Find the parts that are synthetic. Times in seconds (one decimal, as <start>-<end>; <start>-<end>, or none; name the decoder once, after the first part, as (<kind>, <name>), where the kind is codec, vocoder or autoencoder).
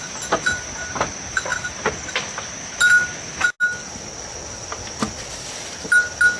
none